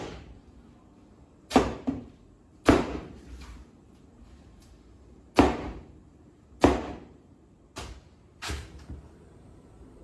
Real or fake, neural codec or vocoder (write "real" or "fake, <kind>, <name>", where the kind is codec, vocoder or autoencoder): fake, vocoder, BigVGAN v2